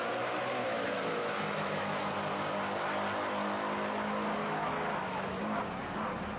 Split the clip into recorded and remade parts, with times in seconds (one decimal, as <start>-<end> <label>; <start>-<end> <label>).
0.0-0.6 recorded; 0.6-2.1 remade; 2.1-4.4 recorded; 4.4-5.6 remade; 5.6-6.4 recorded